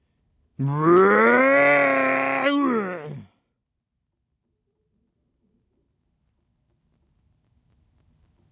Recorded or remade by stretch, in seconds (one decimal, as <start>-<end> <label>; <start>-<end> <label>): 0.0-8.5 recorded